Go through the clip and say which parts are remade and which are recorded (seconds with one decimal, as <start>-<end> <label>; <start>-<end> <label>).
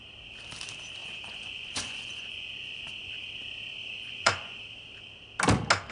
0.0-1.0 recorded; 1.0-3.1 remade; 3.1-3.8 recorded; 3.8-4.6 remade; 4.6-5.9 recorded